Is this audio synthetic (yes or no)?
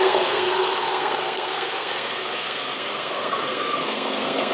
yes